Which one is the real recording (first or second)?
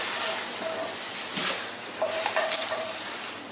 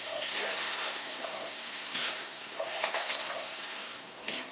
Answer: first